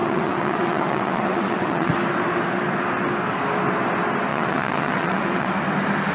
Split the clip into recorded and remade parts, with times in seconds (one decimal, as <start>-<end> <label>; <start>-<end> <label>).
0.0-1.9 remade; 1.9-4.3 recorded; 4.3-5.5 remade; 5.5-6.1 recorded